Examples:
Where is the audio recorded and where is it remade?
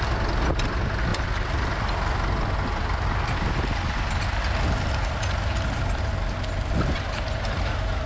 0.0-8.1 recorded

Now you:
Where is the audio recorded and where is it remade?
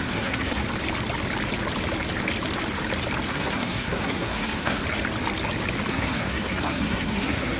0.0-0.6 remade; 0.6-3.3 recorded; 3.3-4.8 remade; 4.8-5.9 recorded; 5.9-7.6 remade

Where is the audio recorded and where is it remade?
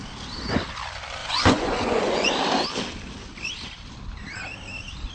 0.0-1.2 recorded; 1.2-2.3 remade; 2.3-5.1 recorded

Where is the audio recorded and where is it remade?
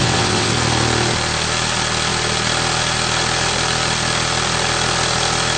0.0-0.5 remade; 0.5-5.6 recorded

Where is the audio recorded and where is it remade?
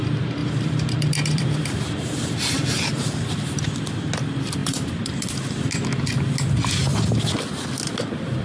0.0-0.4 recorded; 0.4-3.7 remade; 3.7-4.6 recorded; 4.6-5.1 remade; 5.1-8.4 recorded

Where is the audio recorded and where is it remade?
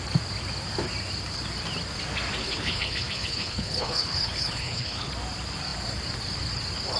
0.0-2.4 recorded; 2.4-5.1 remade; 5.1-7.0 recorded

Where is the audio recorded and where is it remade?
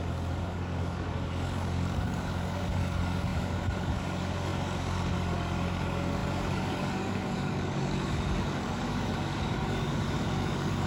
0.0-10.9 remade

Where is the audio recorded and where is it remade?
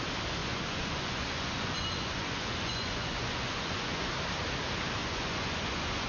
0.0-0.4 recorded; 0.4-4.1 remade; 4.1-5.0 recorded; 5.0-6.1 remade